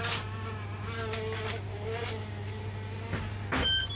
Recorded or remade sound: recorded